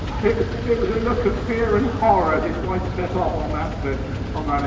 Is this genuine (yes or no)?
yes